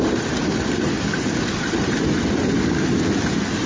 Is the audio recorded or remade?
recorded